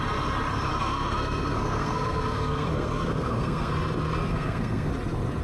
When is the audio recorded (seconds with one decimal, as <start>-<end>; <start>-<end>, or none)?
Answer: 0.0-0.7; 3.7-4.3; 4.9-5.4